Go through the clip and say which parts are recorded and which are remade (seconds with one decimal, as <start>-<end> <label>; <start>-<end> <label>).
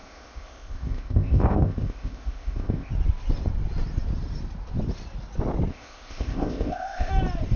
0.0-2.9 remade; 2.9-5.7 recorded; 5.7-7.1 remade; 7.1-7.6 recorded